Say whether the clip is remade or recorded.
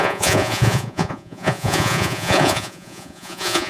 remade